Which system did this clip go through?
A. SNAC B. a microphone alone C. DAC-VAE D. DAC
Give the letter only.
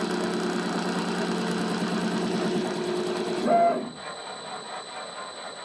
B